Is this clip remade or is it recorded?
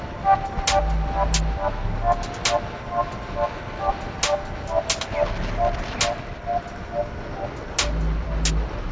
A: recorded